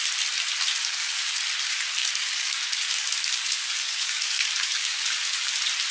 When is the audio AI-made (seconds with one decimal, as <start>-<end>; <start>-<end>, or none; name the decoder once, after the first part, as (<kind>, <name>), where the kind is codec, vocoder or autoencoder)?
0.8-1.4 (codec, DAC); 2.0-5.5